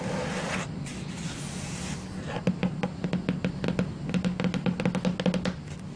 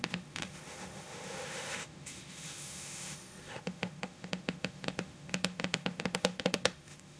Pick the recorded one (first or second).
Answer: first